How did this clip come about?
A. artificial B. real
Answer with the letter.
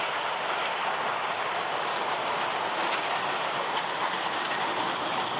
B